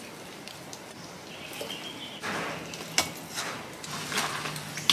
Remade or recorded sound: recorded